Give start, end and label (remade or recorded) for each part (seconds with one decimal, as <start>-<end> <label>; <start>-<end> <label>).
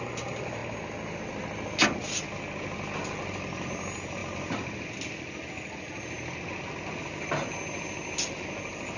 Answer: 0.0-9.0 recorded